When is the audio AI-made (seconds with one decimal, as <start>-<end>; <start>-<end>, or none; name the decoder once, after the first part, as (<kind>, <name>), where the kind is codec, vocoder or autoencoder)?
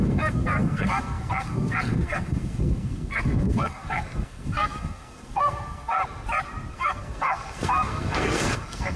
0.0-6.0 (codec, SNAC); 6.7-9.0